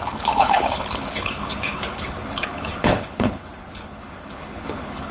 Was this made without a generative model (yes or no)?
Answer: no